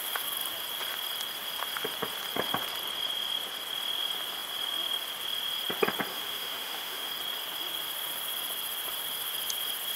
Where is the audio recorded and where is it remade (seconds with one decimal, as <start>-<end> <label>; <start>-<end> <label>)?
0.0-6.1 recorded; 6.1-7.1 remade; 7.1-10.0 recorded